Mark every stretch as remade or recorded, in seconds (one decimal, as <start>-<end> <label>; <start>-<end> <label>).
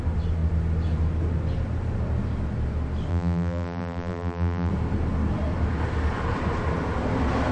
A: 0.0-3.1 recorded; 3.1-4.7 remade; 4.7-7.5 recorded